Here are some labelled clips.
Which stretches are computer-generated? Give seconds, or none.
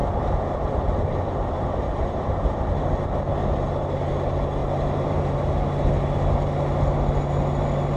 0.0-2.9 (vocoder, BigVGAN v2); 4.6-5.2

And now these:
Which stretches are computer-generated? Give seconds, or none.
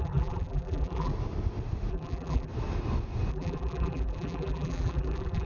0.0-1.1 (vocoder, BigVGAN v2); 1.9-2.5; 3.3-5.4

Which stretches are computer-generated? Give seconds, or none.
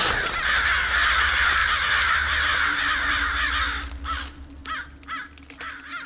1.6-3.5 (vocoder, BigVGAN v2)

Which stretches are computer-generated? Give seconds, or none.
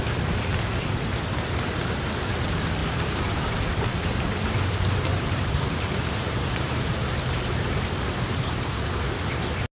2.8-3.5 (vocoder, BigVGAN v2); 5.1-6.9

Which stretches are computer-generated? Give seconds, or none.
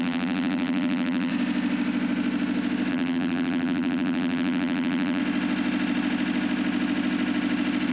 0.0-1.3 (vocoder, BigVGAN v2); 2.9-5.2